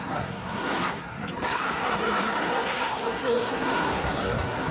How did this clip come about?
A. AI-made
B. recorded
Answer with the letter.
A